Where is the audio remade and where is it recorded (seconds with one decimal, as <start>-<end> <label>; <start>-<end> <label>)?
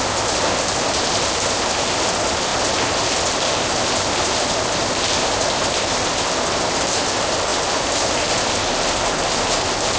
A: 0.0-2.5 recorded; 2.5-3.1 remade; 3.1-4.8 recorded; 4.8-6.1 remade; 6.1-7.5 recorded; 7.5-9.5 remade; 9.5-10.0 recorded